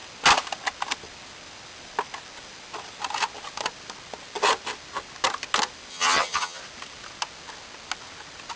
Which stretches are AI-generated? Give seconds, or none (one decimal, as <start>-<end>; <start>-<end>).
5.9-6.6